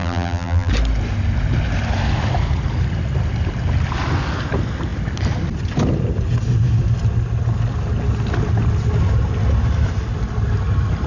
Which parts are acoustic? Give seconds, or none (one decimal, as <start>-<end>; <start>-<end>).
0.7-11.1